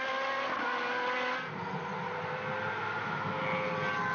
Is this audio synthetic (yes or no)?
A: no